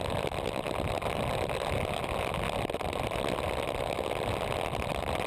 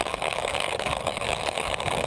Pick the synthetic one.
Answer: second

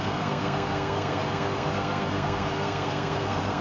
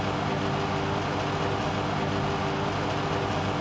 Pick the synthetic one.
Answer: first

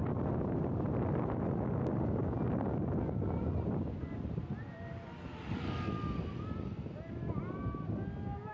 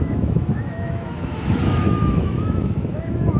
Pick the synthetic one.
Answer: second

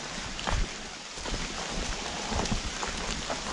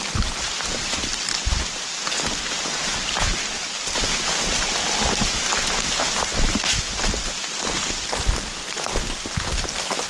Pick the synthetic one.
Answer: first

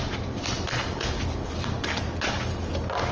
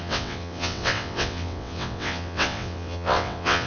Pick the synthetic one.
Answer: second